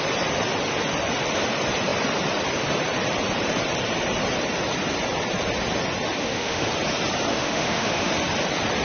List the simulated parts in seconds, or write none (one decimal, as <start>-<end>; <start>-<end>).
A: 6.2-6.7; 7.3-8.1